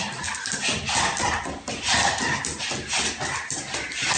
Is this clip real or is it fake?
real